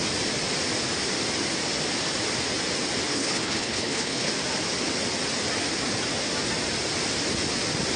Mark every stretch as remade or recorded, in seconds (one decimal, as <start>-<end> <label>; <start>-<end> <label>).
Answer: 0.0-3.1 recorded; 3.1-4.3 remade; 4.3-8.0 recorded